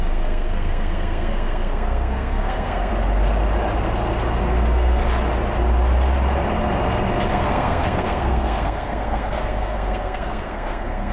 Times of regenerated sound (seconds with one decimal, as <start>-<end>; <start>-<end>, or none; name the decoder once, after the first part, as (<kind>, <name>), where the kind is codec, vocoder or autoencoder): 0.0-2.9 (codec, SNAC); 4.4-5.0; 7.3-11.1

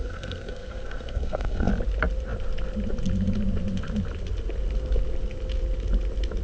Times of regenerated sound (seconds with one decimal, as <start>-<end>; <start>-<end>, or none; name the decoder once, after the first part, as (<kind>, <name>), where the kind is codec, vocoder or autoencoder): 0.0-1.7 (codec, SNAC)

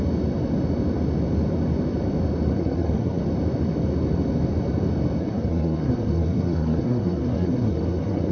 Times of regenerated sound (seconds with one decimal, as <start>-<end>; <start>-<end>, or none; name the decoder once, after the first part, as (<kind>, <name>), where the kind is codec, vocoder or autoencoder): 2.5-3.2 (codec, SNAC); 5.2-8.3

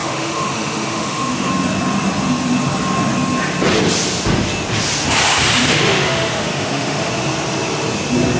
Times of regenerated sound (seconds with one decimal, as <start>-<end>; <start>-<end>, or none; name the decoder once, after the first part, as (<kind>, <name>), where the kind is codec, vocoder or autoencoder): 0.0-1.5 (autoencoder, DAC-VAE); 5.6-7.1

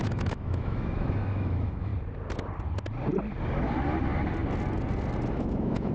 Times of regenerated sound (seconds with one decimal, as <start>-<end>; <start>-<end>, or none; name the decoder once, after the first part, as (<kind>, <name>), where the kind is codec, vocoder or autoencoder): 0.0-1.9 (autoencoder, DAC-VAE); 5.3-5.9

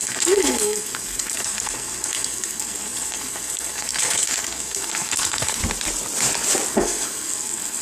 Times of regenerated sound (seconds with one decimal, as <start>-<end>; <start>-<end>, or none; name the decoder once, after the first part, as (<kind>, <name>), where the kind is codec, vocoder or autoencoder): 0.0-5.6 (codec, SNAC); 6.7-7.8